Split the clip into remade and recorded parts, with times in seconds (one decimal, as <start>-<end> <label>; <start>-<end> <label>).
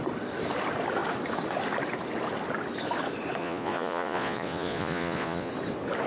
0.0-3.4 recorded; 3.4-5.5 remade; 5.5-6.1 recorded